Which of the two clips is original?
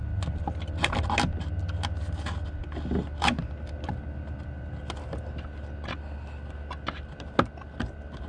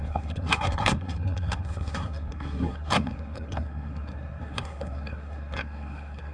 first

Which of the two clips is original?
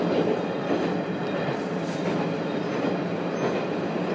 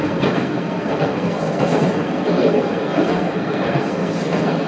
first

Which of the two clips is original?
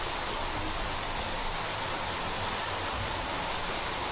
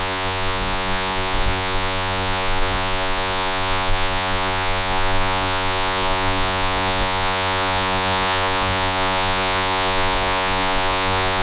first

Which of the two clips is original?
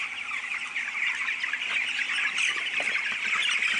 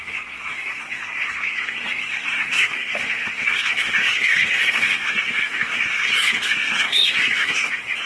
first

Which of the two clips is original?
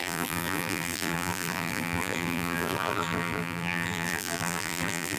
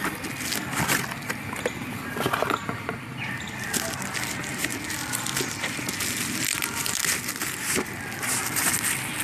second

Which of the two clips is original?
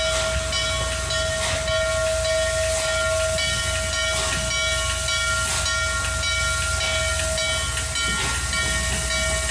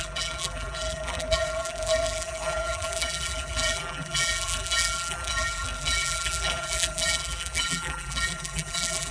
first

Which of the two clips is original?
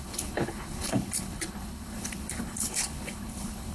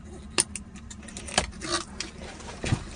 second